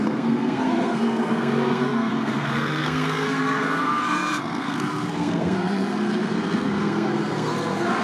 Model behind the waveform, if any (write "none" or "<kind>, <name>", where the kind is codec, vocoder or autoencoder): codec, SNAC